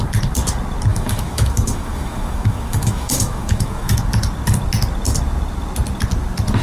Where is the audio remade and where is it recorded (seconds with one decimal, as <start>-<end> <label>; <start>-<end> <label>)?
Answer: 0.0-0.9 recorded; 0.9-4.0 remade; 4.0-6.6 recorded